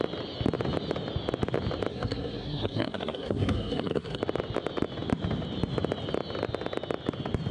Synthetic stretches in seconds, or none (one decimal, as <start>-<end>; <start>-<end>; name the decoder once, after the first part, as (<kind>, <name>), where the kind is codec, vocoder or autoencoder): 1.9-4.2 (codec, SNAC)